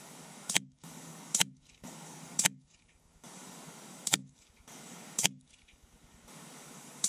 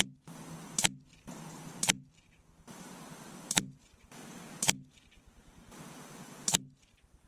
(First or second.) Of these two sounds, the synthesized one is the first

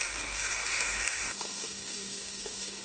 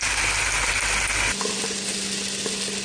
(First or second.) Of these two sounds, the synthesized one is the first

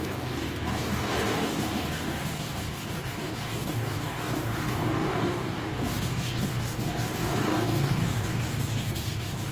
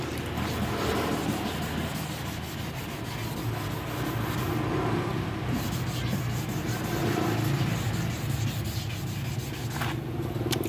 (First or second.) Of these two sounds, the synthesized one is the first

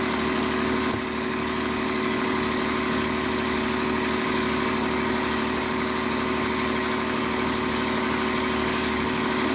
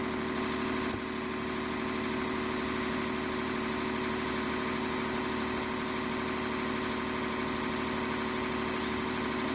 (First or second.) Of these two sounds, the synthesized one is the first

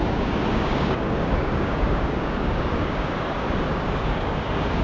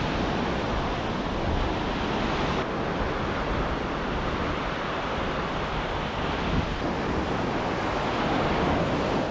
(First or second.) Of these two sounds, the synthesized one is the first